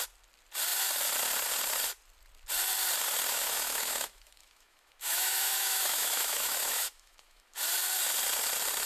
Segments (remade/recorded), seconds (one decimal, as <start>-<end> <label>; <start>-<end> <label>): 0.0-3.3 recorded; 3.3-7.6 remade; 7.6-8.9 recorded